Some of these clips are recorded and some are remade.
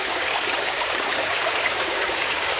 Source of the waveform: remade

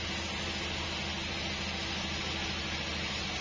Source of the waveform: recorded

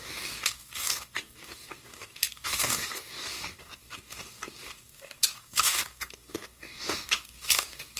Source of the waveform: remade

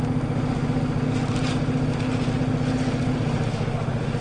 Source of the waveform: recorded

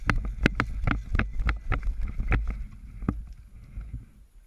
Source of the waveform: recorded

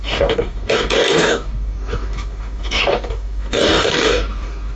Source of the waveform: remade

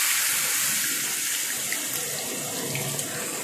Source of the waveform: recorded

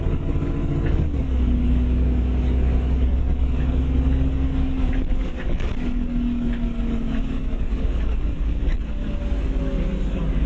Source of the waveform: remade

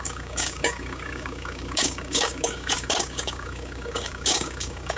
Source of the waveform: remade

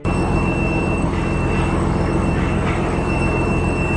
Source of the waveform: remade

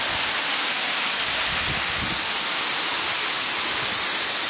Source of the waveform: recorded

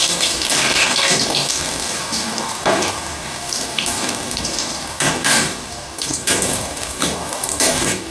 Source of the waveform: remade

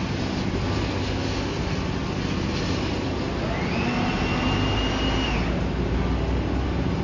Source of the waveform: recorded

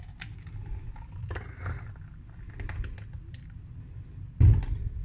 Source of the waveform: recorded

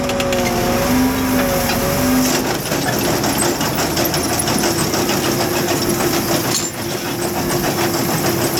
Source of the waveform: recorded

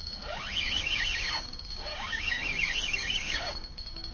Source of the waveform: remade